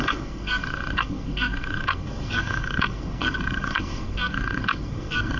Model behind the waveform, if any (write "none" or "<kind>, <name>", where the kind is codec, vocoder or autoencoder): codec, SNAC